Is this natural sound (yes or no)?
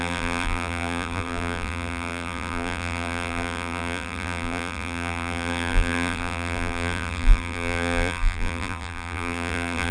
no